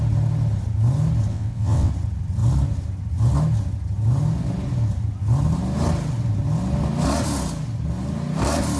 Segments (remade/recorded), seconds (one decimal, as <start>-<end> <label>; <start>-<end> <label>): 0.0-1.3 recorded; 1.3-1.9 remade; 1.9-8.8 recorded